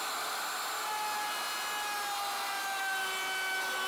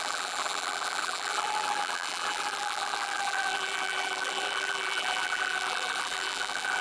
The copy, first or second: second